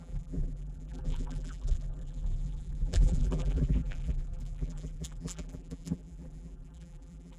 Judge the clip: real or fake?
fake